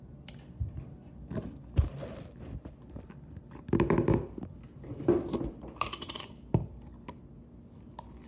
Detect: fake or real real